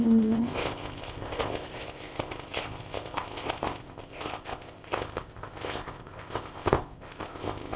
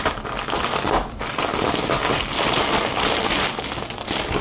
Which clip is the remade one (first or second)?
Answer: first